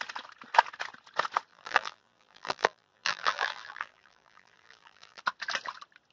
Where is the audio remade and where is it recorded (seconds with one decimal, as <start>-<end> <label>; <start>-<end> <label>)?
0.0-1.5 recorded; 1.5-5.2 remade; 5.2-6.1 recorded